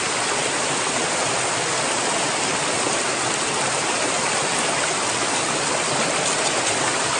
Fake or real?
real